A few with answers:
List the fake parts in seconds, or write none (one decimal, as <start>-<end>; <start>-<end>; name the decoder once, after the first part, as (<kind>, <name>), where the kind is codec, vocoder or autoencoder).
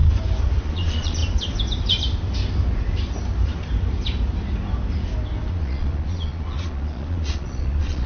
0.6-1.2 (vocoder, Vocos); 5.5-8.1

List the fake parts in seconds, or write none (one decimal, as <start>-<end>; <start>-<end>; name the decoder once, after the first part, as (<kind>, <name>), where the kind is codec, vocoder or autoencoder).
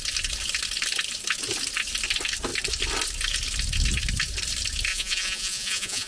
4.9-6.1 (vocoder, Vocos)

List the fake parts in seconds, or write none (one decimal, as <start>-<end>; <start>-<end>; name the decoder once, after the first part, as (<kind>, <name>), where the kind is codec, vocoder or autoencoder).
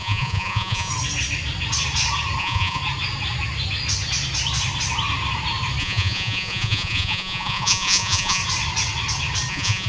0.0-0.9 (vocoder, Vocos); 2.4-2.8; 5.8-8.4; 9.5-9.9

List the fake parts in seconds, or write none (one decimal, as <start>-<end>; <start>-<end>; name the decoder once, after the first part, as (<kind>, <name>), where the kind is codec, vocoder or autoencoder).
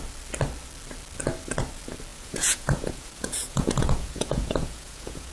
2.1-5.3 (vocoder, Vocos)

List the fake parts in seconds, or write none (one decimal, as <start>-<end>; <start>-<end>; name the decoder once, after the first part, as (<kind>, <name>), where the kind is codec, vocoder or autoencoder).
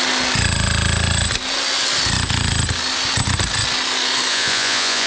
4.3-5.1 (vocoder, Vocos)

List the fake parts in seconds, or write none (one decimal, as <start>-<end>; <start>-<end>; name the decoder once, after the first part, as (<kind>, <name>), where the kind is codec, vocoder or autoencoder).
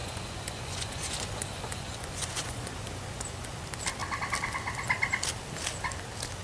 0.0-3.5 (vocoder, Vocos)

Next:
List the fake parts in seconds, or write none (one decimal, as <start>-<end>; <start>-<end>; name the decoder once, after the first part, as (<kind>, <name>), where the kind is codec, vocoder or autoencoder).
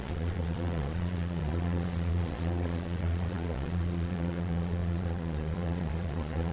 0.0-6.5 (vocoder, Vocos)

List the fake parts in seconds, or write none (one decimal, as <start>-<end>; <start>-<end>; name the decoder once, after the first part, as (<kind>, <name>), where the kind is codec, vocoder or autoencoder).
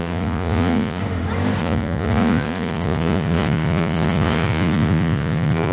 0.0-1.0 (vocoder, Vocos); 1.6-5.7